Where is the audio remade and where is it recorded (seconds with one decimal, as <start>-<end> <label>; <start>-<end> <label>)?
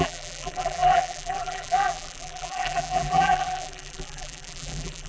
0.0-5.1 remade